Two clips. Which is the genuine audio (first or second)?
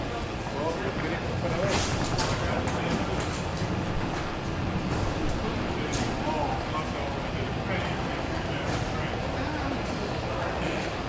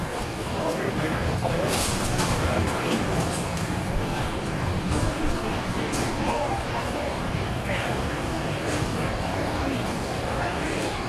first